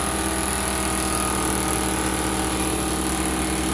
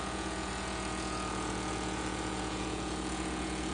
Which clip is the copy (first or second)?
second